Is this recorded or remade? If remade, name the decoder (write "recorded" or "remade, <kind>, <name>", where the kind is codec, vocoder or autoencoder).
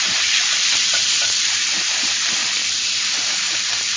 remade, vocoder, BigVGAN v2